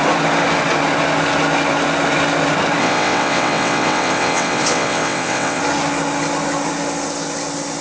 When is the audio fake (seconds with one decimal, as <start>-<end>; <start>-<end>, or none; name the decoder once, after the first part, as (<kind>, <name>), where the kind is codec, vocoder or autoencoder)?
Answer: 2.8-5.6 (vocoder, WaveNeXt)